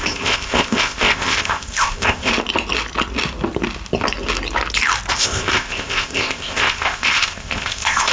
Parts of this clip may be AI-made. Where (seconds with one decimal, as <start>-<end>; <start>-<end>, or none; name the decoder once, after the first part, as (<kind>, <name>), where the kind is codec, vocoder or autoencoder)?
0.0-2.3 (codec, ZipCodec); 5.1-8.1